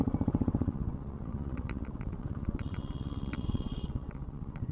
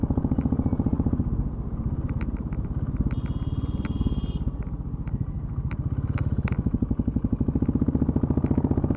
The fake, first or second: first